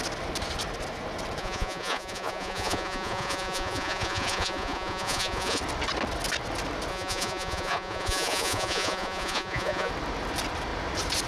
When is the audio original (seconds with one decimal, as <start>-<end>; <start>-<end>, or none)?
0.0-1.4; 5.6-6.9; 9.9-11.3